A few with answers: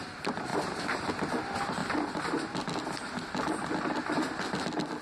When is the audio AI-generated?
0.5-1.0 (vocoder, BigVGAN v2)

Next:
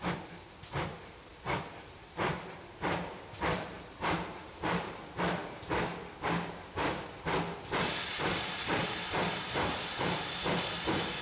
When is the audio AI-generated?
0.0-5.4 (vocoder, BigVGAN v2); 8.3-11.2

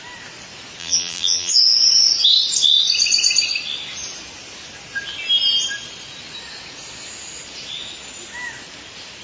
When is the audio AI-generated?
0.8-1.5 (vocoder, BigVGAN v2)

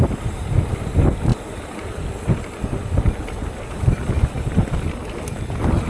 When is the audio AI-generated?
none

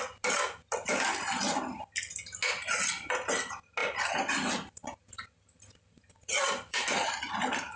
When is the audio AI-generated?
3.8-6.8 (vocoder, BigVGAN v2)

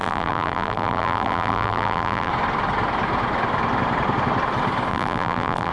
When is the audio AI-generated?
0.0-2.3 (vocoder, BigVGAN v2); 4.9-5.7

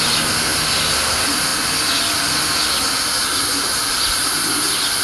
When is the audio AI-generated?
none

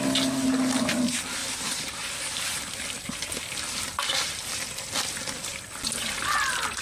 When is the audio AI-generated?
1.4-2.1 (vocoder, BigVGAN v2)